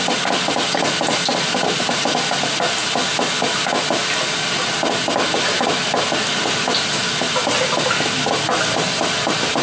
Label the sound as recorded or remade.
recorded